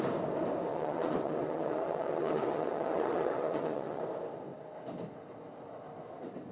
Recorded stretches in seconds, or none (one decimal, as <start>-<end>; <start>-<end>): 0.0-0.7; 4.0-6.5